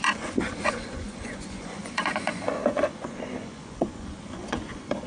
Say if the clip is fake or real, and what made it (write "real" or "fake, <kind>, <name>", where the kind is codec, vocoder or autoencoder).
fake, vocoder, Vocos